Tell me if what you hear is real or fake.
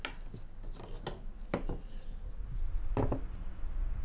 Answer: real